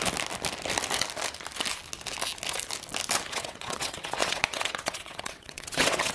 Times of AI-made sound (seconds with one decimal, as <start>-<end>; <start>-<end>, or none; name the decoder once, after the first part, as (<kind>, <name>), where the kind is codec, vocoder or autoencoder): 3.3-6.1 (vocoder, WaveNeXt)